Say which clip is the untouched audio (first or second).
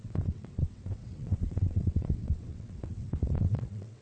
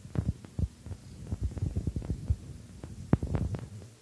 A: second